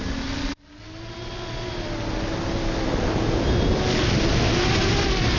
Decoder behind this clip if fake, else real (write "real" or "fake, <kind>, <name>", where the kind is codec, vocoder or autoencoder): real